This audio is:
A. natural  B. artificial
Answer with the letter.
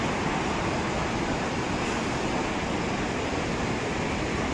A